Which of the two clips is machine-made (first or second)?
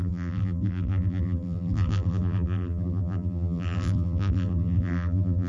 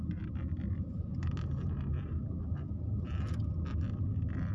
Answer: first